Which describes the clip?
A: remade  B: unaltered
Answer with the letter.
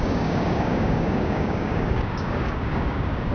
A